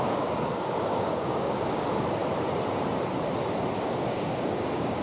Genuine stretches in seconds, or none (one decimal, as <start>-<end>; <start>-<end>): 2.2-3.8